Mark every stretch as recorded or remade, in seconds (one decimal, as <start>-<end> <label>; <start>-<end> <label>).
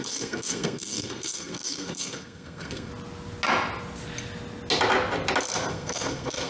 0.0-2.9 remade; 2.9-5.7 recorded; 5.7-6.5 remade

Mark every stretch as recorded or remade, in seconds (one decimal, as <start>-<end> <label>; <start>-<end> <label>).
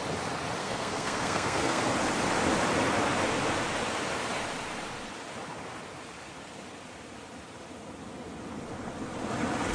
0.0-0.6 recorded; 0.6-1.8 remade; 1.8-9.7 recorded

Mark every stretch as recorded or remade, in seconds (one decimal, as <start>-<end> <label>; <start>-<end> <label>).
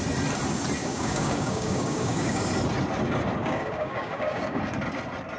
0.0-0.8 recorded; 0.8-2.5 remade; 2.5-3.4 recorded; 3.4-4.6 remade; 4.6-5.4 recorded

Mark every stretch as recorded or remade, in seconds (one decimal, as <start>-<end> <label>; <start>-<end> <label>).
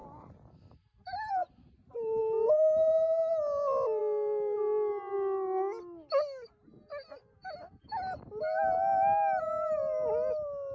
0.0-10.7 recorded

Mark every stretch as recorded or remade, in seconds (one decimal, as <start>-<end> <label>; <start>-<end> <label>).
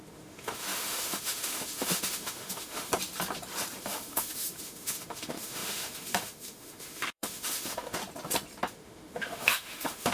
0.0-2.9 remade; 2.9-3.8 recorded; 3.8-8.0 remade; 8.0-8.7 recorded; 8.7-10.1 remade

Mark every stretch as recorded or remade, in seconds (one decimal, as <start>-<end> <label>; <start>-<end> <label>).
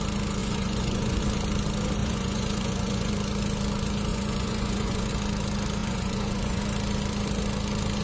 0.0-0.4 recorded; 0.4-1.2 remade; 1.2-2.0 recorded; 2.0-3.1 remade; 3.1-4.1 recorded; 4.1-5.1 remade; 5.1-5.8 recorded; 5.8-6.6 remade; 6.6-8.0 recorded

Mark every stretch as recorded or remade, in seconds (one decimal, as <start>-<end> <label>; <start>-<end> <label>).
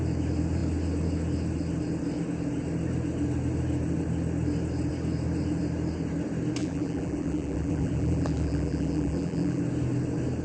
0.0-6.6 recorded; 6.6-9.6 remade; 9.6-10.4 recorded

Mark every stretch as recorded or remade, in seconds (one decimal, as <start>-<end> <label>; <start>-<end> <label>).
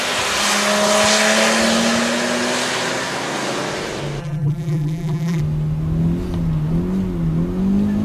0.0-4.2 recorded; 4.2-5.4 remade; 5.4-8.0 recorded